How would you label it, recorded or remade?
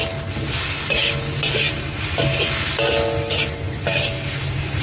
recorded